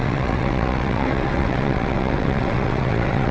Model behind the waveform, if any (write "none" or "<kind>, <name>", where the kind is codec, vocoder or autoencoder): vocoder, WaveNeXt